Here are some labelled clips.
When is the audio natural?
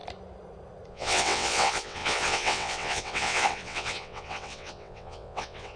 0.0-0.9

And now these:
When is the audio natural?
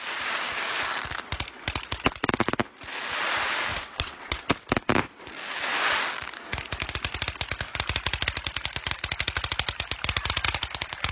0.0-3.7; 4.4-11.1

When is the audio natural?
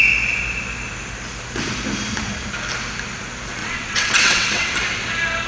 0.0-3.6; 4.7-5.5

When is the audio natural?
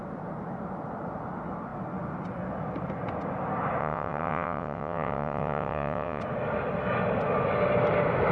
0.0-3.8; 6.2-8.3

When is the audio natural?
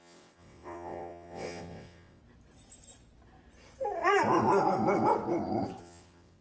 2.2-5.8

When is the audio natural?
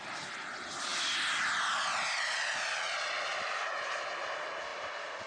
0.0-5.3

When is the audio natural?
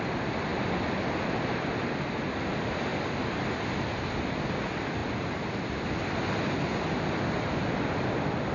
0.0-8.5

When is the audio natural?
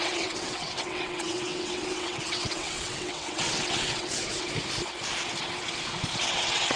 4.2-6.3